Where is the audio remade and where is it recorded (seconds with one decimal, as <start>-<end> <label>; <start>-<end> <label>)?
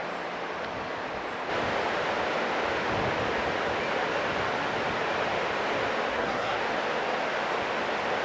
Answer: 0.0-6.1 recorded; 6.1-6.6 remade; 6.6-8.2 recorded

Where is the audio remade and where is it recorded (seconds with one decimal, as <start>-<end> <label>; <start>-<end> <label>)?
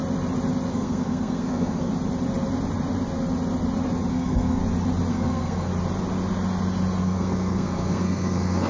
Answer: 0.0-0.7 recorded; 0.7-1.9 remade; 1.9-4.1 recorded; 4.1-4.6 remade; 4.6-5.1 recorded; 5.1-5.7 remade; 5.7-7.0 recorded; 7.0-8.7 remade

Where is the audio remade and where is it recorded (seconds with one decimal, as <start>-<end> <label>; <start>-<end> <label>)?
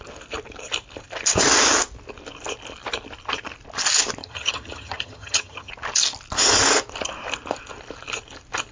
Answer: 0.0-4.2 recorded; 4.2-5.7 remade; 5.7-8.7 recorded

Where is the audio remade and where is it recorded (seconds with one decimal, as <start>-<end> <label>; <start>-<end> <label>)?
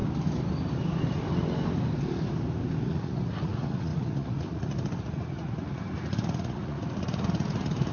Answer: 0.0-2.8 recorded; 2.8-7.9 remade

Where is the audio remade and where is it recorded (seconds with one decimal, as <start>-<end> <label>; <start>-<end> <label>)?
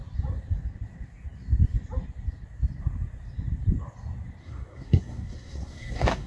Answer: 0.0-4.4 recorded; 4.4-6.3 remade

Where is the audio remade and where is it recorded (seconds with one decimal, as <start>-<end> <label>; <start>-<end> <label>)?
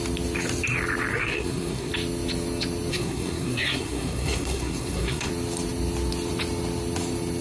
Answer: 0.0-1.1 recorded; 1.1-1.9 remade; 1.9-2.9 recorded; 2.9-5.3 remade; 5.3-7.4 recorded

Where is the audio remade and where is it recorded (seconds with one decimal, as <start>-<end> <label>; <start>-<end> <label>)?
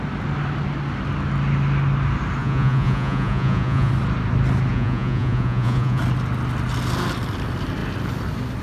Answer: 0.0-2.4 recorded; 2.4-3.9 remade; 3.9-4.7 recorded; 4.7-6.0 remade; 6.0-8.6 recorded